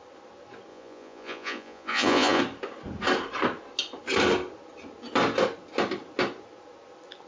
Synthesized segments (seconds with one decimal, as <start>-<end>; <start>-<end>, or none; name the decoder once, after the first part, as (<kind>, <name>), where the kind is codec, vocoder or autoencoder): 0.7-2.4 (vocoder, Vocos)